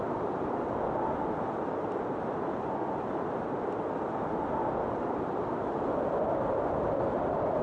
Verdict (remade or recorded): recorded